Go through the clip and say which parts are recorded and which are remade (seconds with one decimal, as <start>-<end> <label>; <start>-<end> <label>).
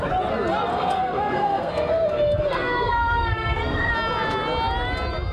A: 0.0-0.7 recorded; 0.7-3.9 remade; 3.9-5.3 recorded